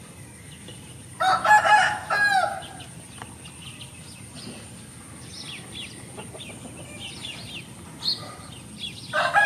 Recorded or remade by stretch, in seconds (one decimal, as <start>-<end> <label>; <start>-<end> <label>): 0.0-9.5 recorded